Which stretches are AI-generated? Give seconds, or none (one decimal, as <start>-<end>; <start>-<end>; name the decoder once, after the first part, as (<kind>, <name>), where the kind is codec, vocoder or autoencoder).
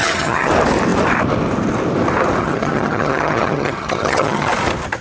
0.0-0.5 (vocoder, HiFi-GAN); 2.4-4.5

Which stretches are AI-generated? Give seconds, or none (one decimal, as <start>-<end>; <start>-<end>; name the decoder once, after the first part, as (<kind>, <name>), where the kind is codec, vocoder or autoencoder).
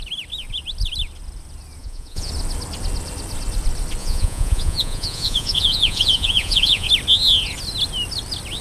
1.8-2.3 (vocoder, Vocos); 4.0-6.9